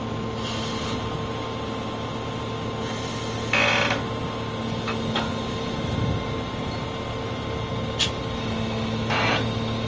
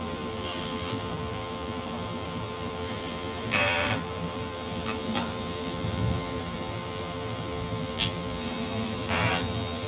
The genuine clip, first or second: first